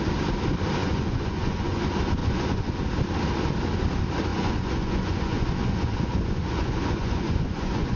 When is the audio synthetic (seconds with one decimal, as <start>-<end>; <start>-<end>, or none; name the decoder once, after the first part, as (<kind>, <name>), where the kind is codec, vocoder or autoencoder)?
0.8-1.8 (vocoder, Vocos); 2.2-2.7; 4.3-8.0